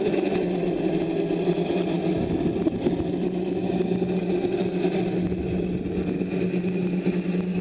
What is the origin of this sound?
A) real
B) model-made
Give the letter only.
A